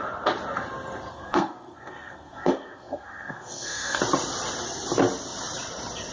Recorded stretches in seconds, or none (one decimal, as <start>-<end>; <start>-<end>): 0.0-1.1; 4.0-6.1